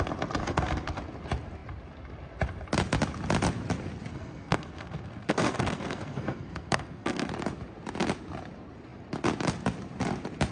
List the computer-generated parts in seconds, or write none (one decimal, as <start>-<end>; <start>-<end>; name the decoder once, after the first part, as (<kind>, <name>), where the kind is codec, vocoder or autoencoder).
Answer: 0.4-1.0 (codec, SNAC); 4.1-7.3

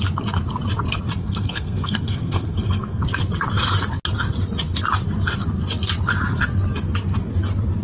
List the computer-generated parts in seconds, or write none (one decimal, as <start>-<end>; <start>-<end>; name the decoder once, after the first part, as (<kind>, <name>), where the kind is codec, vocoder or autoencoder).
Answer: 1.2-3.0 (codec, SNAC)

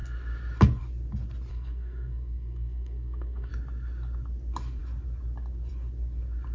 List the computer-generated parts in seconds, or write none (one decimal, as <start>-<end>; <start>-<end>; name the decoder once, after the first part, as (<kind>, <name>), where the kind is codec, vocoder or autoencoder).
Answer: 1.5-3.5 (codec, SNAC)

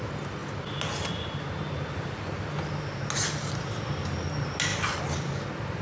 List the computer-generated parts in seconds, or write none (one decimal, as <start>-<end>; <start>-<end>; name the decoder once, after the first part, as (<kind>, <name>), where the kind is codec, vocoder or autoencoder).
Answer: none

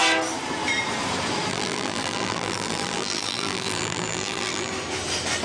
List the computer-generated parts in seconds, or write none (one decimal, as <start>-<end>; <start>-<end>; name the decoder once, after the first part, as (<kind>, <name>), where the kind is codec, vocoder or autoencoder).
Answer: 1.5-4.7 (vocoder, BigVGAN v2)

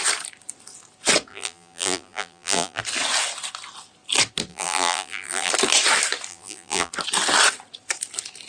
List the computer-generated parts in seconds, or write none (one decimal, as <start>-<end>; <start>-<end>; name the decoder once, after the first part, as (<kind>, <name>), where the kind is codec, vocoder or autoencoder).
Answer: 1.3-2.8 (vocoder, BigVGAN v2); 4.5-5.5; 6.3-6.9

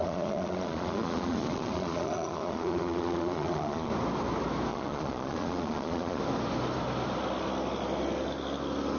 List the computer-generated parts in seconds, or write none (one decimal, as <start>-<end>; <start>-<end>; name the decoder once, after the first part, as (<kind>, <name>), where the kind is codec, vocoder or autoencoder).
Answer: 0.0-3.9 (vocoder, Vocos); 4.7-6.2